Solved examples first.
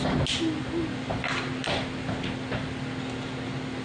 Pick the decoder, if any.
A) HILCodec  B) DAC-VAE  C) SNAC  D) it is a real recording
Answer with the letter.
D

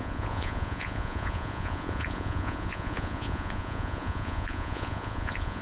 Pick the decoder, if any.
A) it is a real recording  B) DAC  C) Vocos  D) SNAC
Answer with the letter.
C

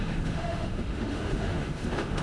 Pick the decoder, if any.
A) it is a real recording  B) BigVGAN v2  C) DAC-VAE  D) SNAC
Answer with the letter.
C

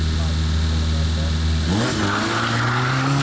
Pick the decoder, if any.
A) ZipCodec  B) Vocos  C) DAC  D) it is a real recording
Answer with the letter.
D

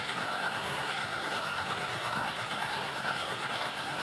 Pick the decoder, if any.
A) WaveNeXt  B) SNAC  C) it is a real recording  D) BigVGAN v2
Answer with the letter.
B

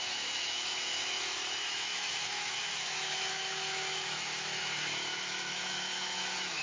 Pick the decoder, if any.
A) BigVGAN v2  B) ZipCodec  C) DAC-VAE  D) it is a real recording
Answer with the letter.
C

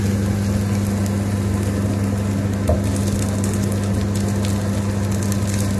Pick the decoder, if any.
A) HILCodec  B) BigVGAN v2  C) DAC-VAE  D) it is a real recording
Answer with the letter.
D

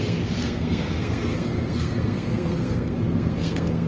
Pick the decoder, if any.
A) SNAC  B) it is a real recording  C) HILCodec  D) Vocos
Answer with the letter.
A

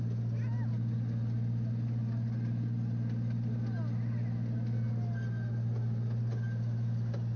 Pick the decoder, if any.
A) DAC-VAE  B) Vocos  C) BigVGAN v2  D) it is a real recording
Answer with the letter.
D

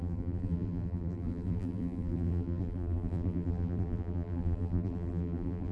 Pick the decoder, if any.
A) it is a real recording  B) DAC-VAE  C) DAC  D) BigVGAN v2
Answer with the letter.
D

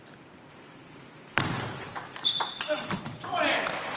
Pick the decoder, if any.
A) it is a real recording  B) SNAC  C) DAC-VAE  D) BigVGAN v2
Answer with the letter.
A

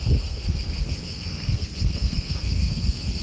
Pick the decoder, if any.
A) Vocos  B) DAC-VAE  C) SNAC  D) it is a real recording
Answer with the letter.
C